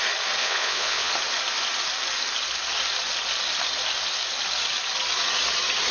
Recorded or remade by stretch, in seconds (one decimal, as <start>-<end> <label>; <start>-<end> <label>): 0.0-0.4 recorded; 0.4-1.1 remade; 1.1-5.9 recorded